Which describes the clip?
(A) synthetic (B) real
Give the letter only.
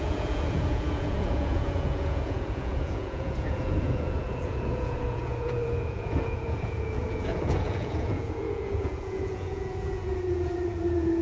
A